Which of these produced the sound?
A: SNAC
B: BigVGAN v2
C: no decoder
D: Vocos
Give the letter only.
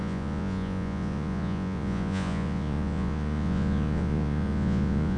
D